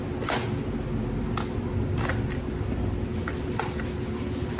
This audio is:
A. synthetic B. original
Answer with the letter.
B